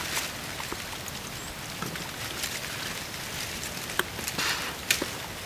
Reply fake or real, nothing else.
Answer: real